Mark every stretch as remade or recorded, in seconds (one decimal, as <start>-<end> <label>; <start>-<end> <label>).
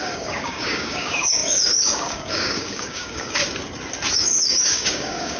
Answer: 0.0-3.4 remade; 3.4-4.1 recorded; 4.1-5.4 remade